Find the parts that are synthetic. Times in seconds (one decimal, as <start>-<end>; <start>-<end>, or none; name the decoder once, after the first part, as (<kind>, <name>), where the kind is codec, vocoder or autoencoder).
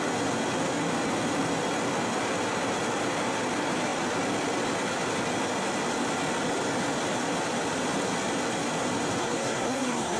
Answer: 9.2-10.2 (codec, SNAC)